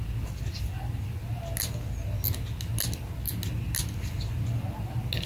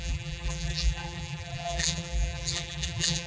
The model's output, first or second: second